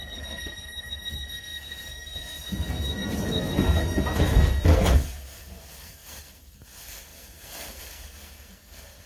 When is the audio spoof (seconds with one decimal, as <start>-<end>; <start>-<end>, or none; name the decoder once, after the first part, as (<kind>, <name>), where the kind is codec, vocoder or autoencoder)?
0.0-9.1 (codec, SNAC)